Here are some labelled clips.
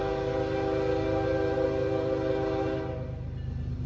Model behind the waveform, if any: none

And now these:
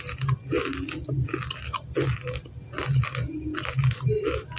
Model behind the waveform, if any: none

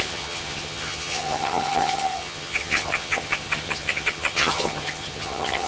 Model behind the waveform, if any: vocoder, HiFi-GAN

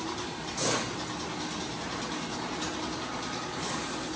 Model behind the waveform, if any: none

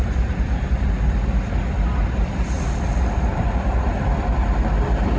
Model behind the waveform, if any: none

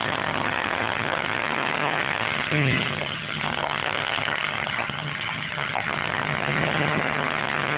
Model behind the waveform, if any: vocoder, HiFi-GAN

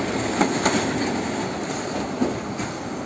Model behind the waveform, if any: none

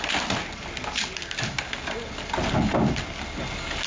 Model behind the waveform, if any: none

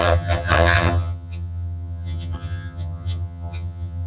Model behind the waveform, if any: vocoder, HiFi-GAN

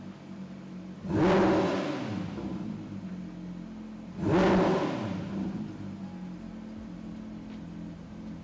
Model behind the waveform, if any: none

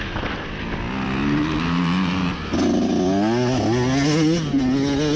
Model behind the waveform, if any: none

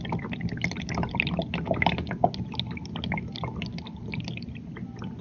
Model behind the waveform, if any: none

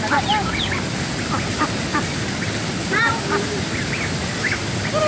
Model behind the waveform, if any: none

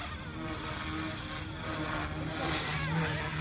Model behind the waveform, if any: none